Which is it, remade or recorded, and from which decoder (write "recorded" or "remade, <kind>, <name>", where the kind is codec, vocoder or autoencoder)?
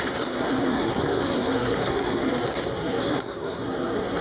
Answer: remade, codec, SNAC